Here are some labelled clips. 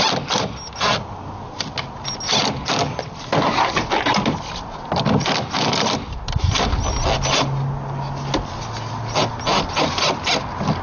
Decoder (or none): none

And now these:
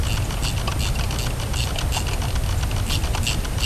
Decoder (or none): none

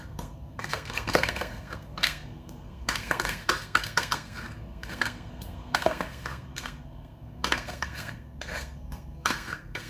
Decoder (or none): codec, SNAC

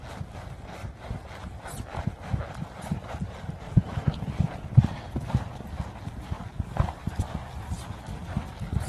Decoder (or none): none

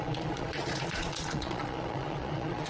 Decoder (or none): vocoder, Vocos